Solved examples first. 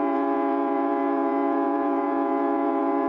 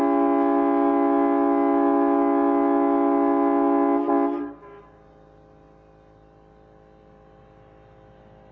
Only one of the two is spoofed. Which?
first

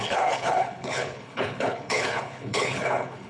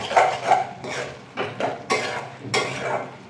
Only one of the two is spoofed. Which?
first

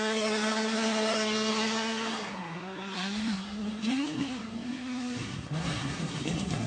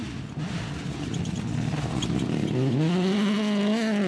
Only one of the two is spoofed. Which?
first